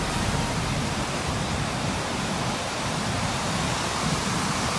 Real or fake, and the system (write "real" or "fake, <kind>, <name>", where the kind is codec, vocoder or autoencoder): real